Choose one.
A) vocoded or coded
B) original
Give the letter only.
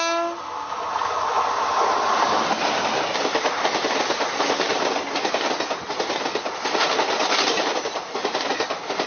B